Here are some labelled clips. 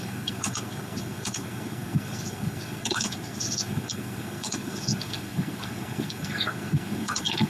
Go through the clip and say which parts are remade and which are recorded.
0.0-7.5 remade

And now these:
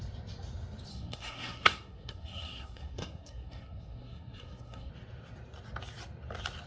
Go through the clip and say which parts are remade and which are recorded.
0.0-0.9 recorded; 0.9-4.9 remade; 4.9-6.7 recorded

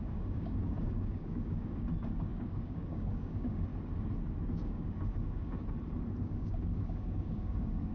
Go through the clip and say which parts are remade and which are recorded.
0.0-3.7 remade; 3.7-4.5 recorded; 4.5-5.6 remade; 5.6-6.2 recorded; 6.2-7.9 remade

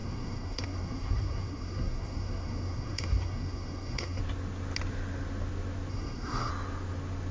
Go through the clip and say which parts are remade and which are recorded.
0.0-4.2 remade; 4.2-5.9 recorded; 5.9-6.5 remade; 6.5-7.3 recorded

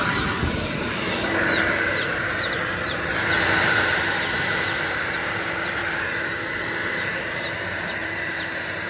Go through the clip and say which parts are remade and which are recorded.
0.0-5.8 remade; 5.8-7.0 recorded; 7.0-8.9 remade

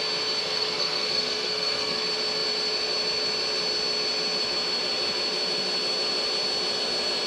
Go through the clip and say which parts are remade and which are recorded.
0.0-0.4 recorded; 0.4-2.0 remade; 2.0-7.3 recorded

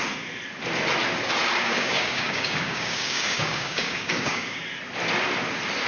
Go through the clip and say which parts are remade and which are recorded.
0.0-1.6 recorded; 1.6-4.6 remade; 4.6-5.9 recorded

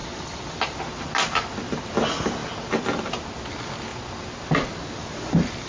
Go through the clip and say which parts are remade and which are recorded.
0.0-5.7 recorded